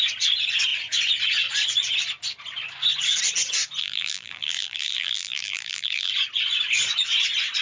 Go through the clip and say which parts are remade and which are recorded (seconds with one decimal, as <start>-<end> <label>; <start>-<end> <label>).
0.0-3.8 recorded; 3.8-6.1 remade; 6.1-7.6 recorded